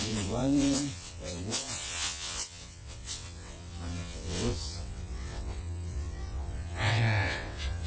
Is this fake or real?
fake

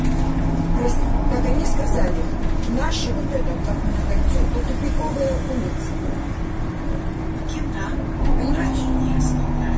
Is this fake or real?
real